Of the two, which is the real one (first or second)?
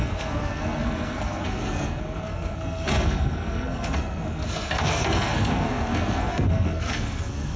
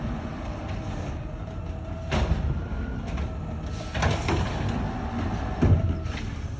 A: second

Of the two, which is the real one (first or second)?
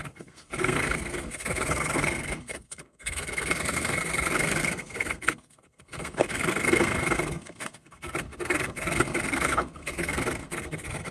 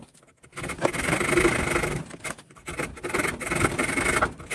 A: second